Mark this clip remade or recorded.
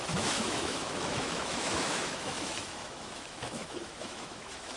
remade